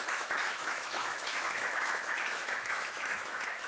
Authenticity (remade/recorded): remade